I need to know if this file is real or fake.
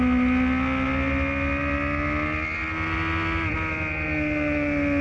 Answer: real